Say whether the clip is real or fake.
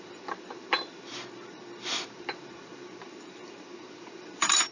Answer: fake